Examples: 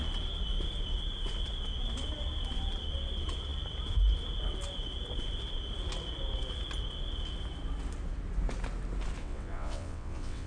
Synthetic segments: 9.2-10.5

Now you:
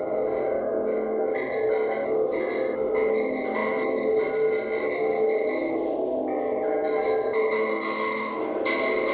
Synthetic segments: none

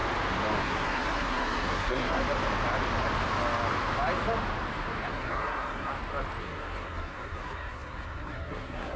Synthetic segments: 0.6-2.2; 5.1-5.9; 6.4-9.0